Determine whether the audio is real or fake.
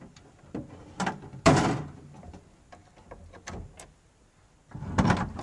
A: real